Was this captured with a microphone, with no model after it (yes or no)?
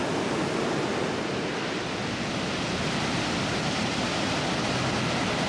yes